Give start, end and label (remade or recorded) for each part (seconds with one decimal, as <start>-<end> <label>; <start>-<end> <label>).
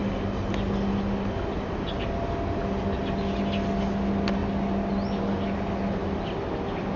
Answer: 0.0-7.0 recorded